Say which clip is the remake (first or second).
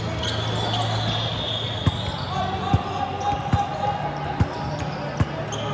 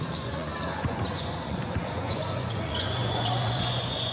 second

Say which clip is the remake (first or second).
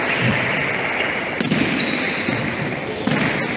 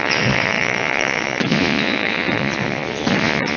second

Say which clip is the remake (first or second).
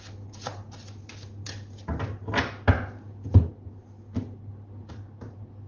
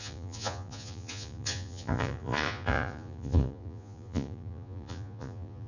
second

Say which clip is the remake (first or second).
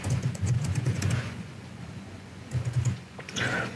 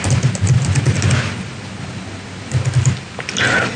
first